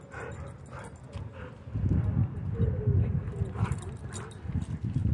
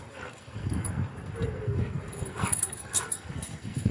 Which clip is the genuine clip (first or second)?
first